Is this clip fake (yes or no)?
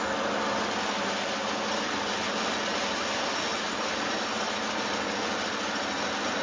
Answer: no